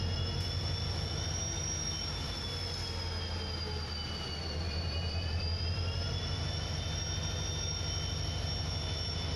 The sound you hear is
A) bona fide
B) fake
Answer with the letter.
A